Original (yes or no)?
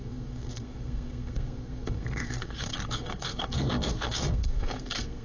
no